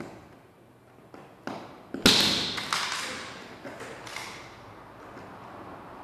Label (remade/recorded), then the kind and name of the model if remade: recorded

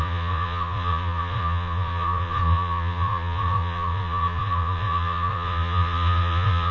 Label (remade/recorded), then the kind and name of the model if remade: remade, vocoder, Vocos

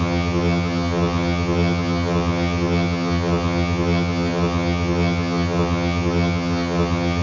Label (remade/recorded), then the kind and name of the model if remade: remade, vocoder, HiFi-GAN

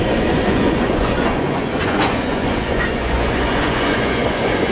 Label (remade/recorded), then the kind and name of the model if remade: remade, vocoder, Vocos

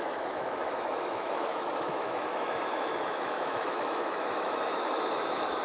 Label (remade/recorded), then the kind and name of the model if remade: remade, autoencoder, DAC-VAE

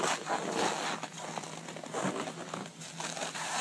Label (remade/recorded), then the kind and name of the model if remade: recorded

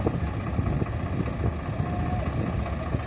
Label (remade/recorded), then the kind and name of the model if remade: recorded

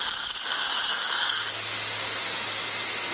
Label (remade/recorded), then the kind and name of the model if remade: recorded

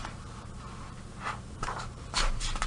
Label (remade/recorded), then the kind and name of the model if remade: remade, vocoder, BigVGAN v2